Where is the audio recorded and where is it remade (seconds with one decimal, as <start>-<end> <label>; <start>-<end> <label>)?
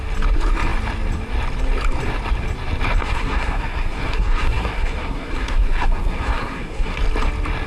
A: 0.0-3.0 recorded; 3.0-7.0 remade; 7.0-7.7 recorded